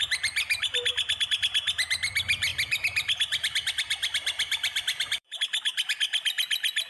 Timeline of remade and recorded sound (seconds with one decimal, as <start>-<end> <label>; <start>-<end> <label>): 0.0-2.5 recorded; 2.5-5.4 remade; 5.4-6.9 recorded